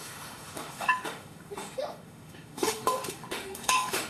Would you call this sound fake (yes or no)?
yes